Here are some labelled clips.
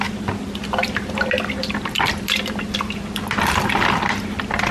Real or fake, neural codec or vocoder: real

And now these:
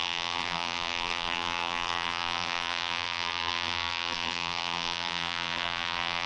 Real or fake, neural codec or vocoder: fake, vocoder, BigVGAN v2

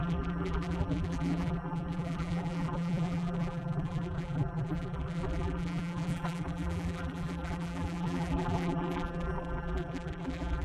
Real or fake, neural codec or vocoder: fake, vocoder, BigVGAN v2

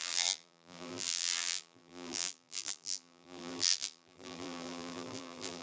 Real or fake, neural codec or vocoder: fake, vocoder, BigVGAN v2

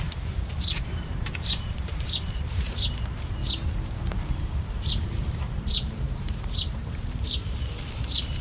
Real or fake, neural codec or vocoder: fake, vocoder, BigVGAN v2